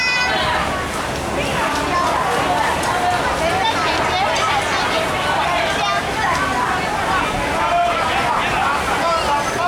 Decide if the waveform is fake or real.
real